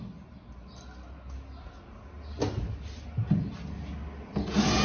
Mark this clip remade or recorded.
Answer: recorded